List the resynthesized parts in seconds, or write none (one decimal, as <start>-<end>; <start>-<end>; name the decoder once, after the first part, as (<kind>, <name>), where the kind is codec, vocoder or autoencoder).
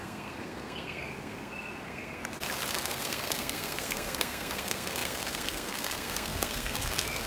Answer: 0.0-2.2 (codec, SNAC); 2.7-7.3